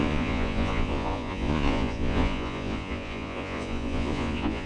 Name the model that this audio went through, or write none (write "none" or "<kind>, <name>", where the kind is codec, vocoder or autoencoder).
vocoder, Vocos